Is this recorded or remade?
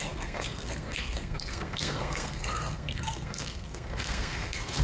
remade